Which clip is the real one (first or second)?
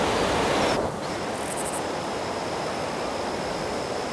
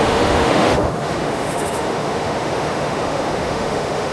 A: first